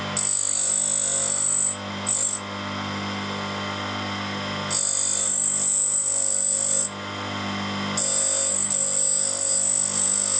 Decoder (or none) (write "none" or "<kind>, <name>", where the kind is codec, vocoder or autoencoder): none